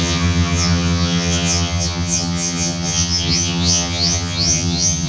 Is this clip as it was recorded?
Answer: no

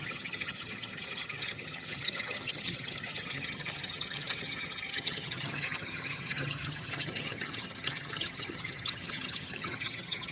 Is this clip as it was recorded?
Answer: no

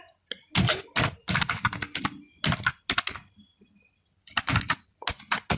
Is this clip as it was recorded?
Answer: yes